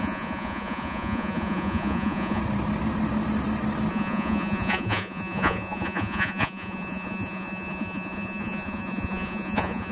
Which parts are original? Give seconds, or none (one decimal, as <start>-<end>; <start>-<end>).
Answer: 2.4-3.9